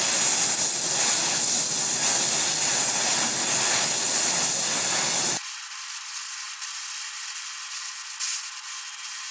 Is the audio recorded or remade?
recorded